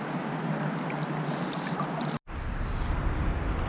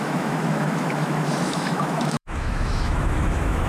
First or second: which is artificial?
second